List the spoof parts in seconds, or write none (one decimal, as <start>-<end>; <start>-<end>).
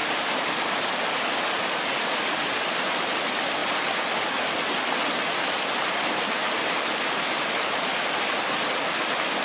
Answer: none